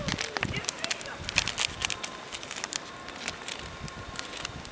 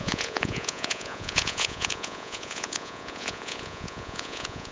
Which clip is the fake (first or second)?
second